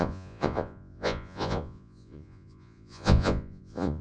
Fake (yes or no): yes